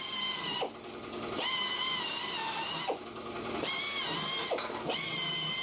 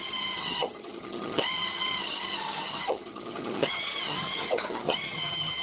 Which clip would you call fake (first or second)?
second